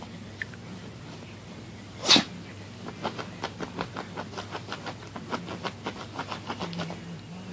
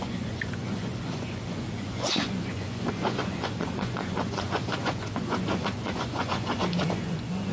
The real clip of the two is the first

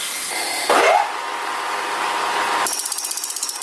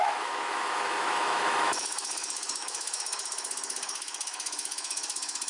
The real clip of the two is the first